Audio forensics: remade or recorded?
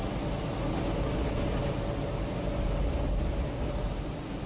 recorded